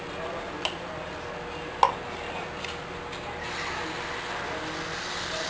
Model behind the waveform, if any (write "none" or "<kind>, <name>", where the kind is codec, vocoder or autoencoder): none